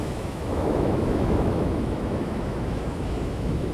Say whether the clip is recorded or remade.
remade